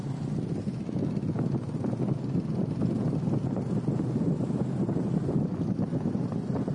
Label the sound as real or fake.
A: real